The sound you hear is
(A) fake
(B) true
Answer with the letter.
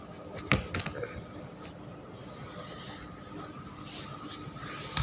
B